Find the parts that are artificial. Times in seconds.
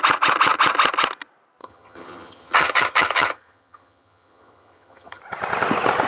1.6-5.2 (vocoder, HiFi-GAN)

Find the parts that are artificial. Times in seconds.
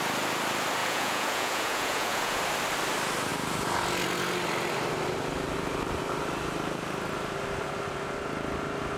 0.8-2.4 (vocoder, Vocos)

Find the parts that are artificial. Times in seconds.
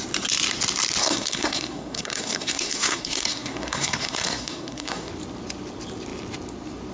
1.0-5.1 (codec, SNAC)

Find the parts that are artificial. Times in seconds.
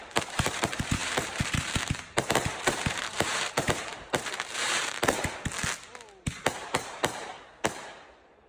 0.0-5.0 (vocoder, BigVGAN v2); 6.5-7.3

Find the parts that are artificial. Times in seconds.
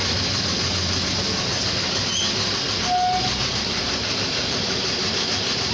3.4-5.7 (vocoder, BigVGAN v2)